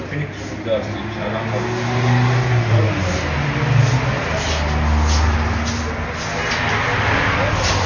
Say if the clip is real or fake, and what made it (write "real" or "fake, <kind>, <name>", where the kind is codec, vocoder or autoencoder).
real